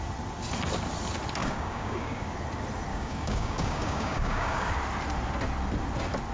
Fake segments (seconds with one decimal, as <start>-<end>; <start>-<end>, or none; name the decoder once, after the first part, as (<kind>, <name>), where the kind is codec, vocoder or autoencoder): 1.4-2.3 (codec, DAC); 2.9-4.7